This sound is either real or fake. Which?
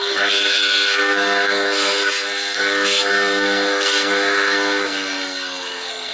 fake